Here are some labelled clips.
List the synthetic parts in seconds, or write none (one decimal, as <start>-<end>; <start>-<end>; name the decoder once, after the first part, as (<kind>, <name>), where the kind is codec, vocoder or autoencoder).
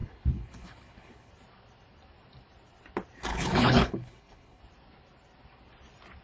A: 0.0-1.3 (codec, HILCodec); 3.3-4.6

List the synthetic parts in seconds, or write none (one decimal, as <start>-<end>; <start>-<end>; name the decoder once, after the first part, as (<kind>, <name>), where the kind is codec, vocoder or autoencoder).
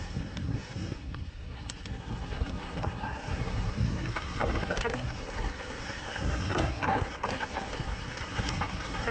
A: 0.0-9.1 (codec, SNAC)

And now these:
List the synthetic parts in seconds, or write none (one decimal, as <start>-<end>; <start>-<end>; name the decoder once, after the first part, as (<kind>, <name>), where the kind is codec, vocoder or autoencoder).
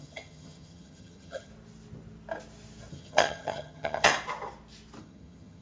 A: 0.0-1.5 (vocoder, HiFi-GAN); 2.9-4.1; 5.0-5.6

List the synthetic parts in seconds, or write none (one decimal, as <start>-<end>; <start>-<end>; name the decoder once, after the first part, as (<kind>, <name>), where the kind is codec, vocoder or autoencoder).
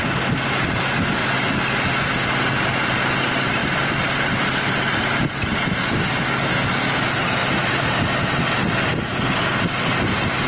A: 1.2-2.1 (vocoder, BigVGAN v2); 3.6-4.5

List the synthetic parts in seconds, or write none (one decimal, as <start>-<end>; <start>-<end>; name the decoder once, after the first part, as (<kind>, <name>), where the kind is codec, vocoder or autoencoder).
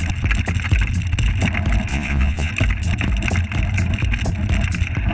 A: 1.9-2.5 (vocoder, Vocos)